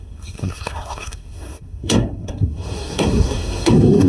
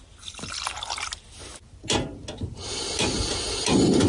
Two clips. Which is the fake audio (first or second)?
first